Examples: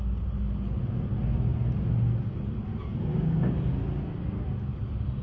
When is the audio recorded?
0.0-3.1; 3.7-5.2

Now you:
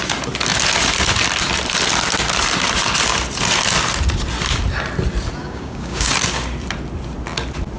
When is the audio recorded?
0.0-5.4; 6.1-7.8

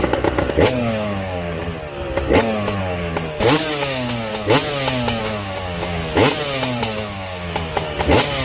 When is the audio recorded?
1.6-2.8; 4.3-5.2; 6.0-6.8

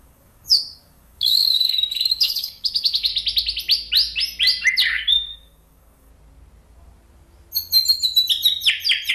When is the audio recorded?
3.1-4.9; 6.1-9.1

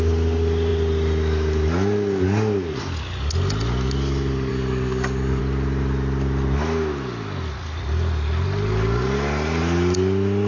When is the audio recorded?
0.0-4.5; 5.4-10.5

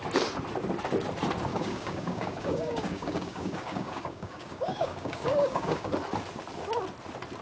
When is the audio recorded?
0.0-1.5; 5.9-7.4

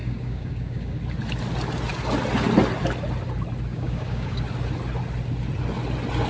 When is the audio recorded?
1.0-3.7; 4.4-6.3